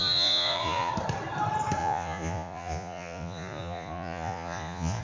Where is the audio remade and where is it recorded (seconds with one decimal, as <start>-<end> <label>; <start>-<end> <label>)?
0.0-0.9 remade; 0.9-1.8 recorded; 1.8-5.0 remade